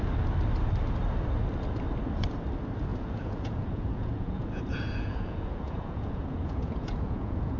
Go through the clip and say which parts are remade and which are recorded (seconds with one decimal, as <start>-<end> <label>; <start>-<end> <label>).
0.0-2.9 recorded; 2.9-7.6 remade